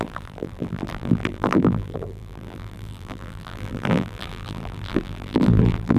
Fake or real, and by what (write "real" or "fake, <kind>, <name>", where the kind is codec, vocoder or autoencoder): fake, vocoder, BigVGAN v2